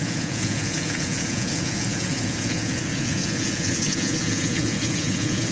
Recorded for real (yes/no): no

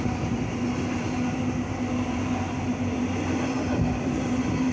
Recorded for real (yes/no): yes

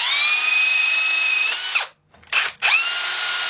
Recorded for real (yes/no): yes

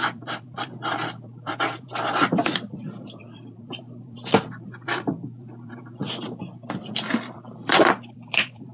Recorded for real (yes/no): no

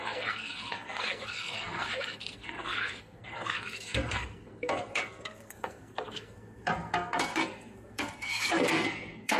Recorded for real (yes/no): no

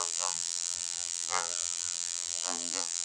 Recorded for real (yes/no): no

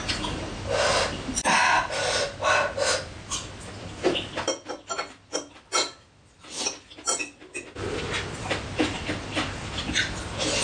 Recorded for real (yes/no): yes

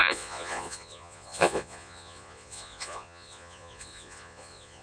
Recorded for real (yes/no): no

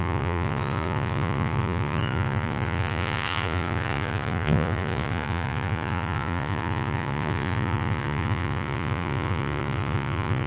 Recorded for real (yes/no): no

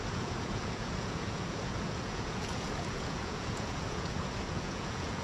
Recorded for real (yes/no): no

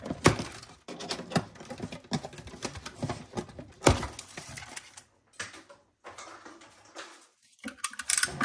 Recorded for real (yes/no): yes